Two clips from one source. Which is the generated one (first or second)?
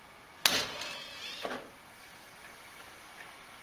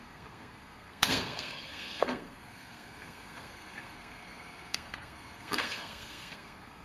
second